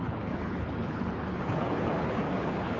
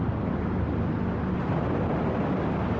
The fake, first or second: first